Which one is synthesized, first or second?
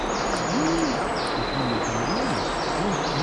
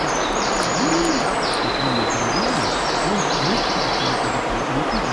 second